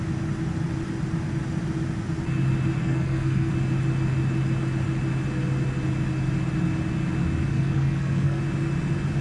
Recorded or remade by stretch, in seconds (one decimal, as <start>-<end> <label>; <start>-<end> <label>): 0.0-2.8 recorded; 2.8-3.5 remade; 3.5-7.5 recorded; 7.5-8.4 remade; 8.4-9.2 recorded